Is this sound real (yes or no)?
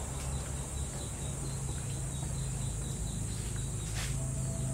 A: yes